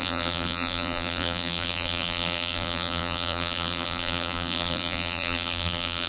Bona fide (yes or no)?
no